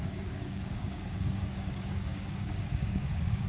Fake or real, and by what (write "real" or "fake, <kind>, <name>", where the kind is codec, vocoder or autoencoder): fake, codec, DAC